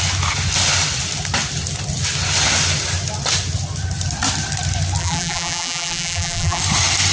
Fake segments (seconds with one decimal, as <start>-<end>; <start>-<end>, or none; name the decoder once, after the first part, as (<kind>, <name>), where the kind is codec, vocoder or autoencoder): 5.0-6.6 (vocoder, BigVGAN v2)